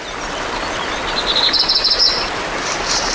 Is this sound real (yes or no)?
yes